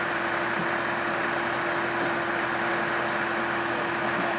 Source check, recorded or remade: recorded